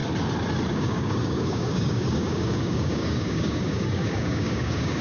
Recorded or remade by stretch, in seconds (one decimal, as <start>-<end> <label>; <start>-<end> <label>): 0.0-0.7 recorded; 0.7-5.0 remade